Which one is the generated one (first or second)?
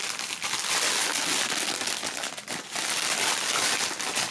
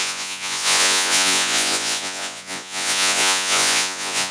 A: second